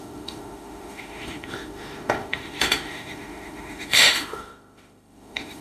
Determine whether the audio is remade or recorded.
remade